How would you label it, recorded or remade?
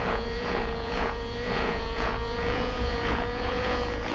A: remade